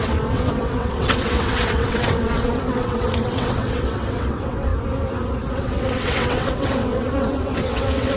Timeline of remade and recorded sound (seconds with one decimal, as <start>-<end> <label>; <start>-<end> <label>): 0.0-4.7 remade; 4.7-5.5 recorded; 5.5-8.2 remade